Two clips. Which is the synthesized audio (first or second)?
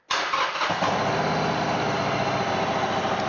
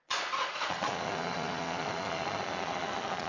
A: second